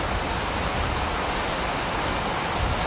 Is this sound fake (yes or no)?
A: no